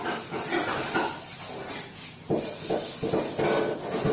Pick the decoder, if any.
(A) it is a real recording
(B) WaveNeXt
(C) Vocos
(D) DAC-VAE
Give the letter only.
A